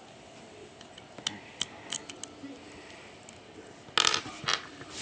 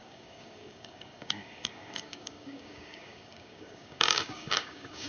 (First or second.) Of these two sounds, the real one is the first